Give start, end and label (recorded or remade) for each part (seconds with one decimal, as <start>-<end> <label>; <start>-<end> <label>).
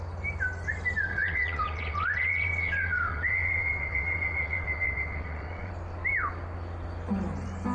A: 0.0-1.1 recorded; 1.1-5.7 remade; 5.7-7.7 recorded